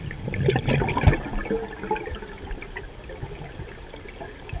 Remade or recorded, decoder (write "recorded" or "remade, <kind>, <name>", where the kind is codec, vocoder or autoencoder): recorded